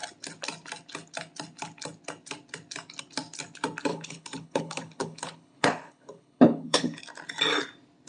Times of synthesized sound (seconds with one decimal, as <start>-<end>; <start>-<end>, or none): 3.9-7.0